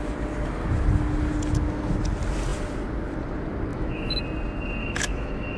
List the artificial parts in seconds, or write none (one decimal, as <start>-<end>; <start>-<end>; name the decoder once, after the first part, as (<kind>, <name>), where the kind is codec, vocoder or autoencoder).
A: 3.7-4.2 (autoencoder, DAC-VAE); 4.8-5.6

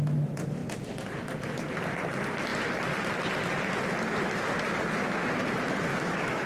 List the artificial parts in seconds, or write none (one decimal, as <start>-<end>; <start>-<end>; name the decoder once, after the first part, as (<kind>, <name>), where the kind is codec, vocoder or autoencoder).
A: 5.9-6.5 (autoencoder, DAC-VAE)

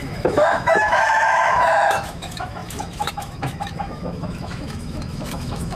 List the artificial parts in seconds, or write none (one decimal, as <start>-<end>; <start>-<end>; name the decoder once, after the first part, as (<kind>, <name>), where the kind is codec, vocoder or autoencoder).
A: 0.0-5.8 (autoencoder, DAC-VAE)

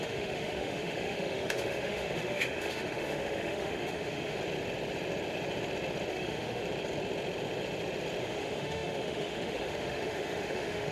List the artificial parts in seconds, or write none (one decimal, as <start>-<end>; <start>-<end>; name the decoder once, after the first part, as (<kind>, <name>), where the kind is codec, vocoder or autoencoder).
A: 0.0-4.4 (autoencoder, DAC-VAE); 6.1-6.6; 8.2-10.9

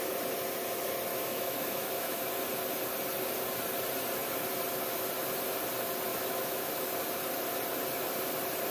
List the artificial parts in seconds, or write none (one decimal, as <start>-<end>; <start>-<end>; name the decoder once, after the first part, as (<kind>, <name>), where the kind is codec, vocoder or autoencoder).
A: 1.1-2.3 (autoencoder, DAC-VAE); 6.1-6.7

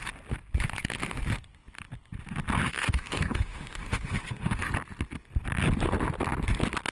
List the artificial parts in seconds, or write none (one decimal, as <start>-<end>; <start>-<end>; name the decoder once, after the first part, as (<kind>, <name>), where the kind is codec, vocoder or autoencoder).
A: 2.7-4.7 (autoencoder, DAC-VAE)

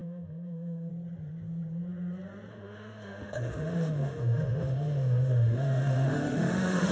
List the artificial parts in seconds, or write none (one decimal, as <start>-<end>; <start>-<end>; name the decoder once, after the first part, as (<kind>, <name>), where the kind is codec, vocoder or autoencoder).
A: 0.0-0.9 (autoencoder, DAC-VAE); 2.5-6.9